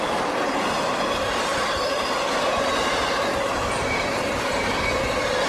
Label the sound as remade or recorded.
remade